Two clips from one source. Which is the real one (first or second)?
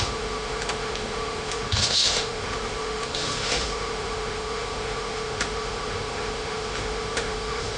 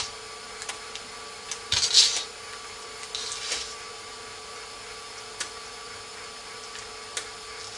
second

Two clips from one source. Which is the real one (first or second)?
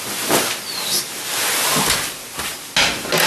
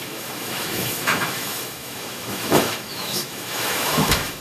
first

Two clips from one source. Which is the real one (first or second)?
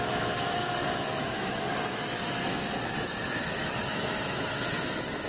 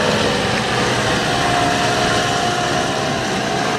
second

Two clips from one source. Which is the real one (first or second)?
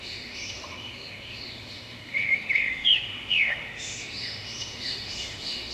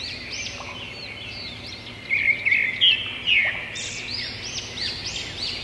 second